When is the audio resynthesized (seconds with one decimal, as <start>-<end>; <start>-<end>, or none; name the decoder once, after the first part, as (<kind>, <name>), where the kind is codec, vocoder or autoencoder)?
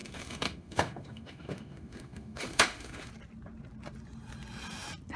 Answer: 0.0-3.1 (autoencoder, DAC-VAE)